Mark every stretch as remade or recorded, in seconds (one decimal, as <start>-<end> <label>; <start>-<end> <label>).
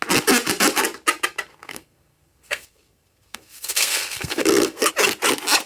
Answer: 0.0-1.5 recorded; 1.5-4.9 remade; 4.9-5.7 recorded